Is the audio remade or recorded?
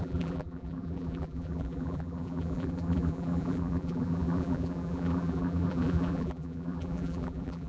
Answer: remade